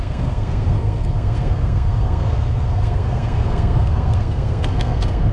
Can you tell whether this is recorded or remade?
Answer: remade